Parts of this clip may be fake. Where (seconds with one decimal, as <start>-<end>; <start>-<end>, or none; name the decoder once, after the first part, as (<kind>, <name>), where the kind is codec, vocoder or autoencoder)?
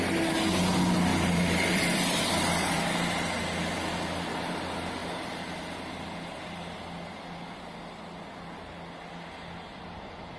1.1-2.9 (vocoder, BigVGAN v2)